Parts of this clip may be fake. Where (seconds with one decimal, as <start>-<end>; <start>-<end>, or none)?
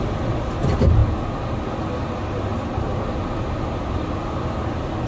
none